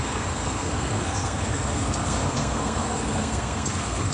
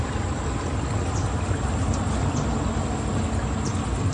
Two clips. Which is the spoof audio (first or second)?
first